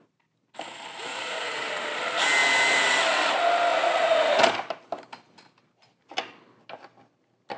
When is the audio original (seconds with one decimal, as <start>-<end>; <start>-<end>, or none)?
0.0-1.1; 1.7-3.7; 4.4-7.6

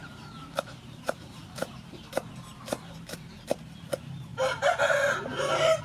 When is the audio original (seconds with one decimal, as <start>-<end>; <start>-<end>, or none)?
none

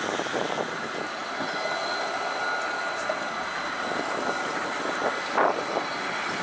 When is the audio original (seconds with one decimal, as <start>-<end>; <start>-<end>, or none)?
0.0-6.4

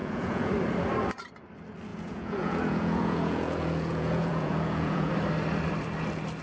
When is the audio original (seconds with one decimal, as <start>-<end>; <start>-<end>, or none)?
0.5-1.9; 5.1-6.4

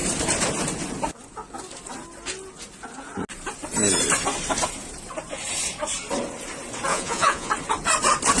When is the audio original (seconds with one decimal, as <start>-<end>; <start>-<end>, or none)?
0.0-6.9; 7.5-8.4

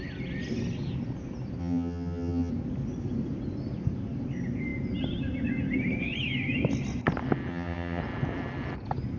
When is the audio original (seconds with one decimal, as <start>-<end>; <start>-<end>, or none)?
0.0-1.6; 2.5-7.5; 8.0-9.2

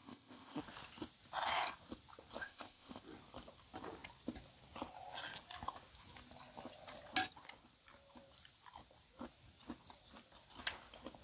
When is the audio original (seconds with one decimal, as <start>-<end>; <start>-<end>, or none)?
0.6-2.4; 3.0-11.2